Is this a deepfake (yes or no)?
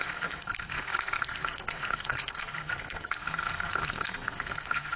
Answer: yes